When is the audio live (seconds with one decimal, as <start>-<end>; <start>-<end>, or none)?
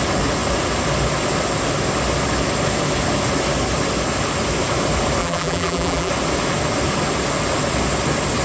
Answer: 0.0-5.2; 6.1-8.4